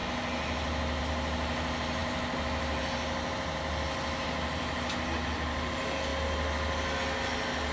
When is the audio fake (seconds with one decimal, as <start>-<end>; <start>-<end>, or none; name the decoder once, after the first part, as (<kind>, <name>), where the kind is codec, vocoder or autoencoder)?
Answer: none